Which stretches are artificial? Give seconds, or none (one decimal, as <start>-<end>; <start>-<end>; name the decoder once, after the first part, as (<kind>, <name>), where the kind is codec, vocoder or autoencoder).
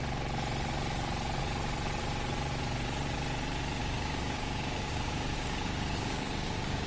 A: 3.8-6.9 (codec, DAC)